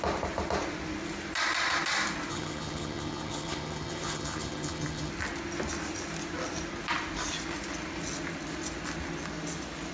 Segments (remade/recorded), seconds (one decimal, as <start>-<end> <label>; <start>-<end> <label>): 0.0-2.3 recorded; 2.3-5.1 remade; 5.1-9.9 recorded